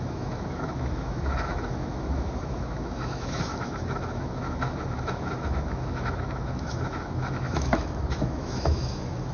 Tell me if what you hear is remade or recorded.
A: remade